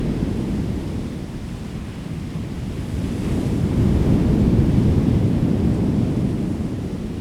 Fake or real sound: real